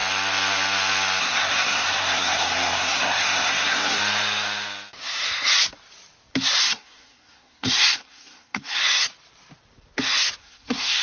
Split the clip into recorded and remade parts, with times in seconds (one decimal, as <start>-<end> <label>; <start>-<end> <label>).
0.0-1.2 recorded; 1.2-4.0 remade; 4.0-6.6 recorded; 6.6-8.8 remade; 8.8-10.4 recorded; 10.4-11.0 remade